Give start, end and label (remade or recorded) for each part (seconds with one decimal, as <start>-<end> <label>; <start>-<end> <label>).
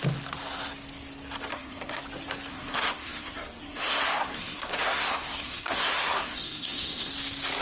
0.0-1.5 recorded; 1.5-2.0 remade; 2.0-2.5 recorded; 2.5-7.1 remade; 7.1-7.6 recorded